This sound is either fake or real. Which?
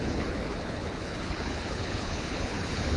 fake